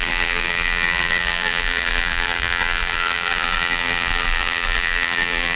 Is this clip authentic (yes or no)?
no